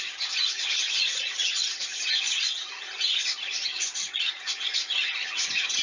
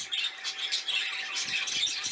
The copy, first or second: first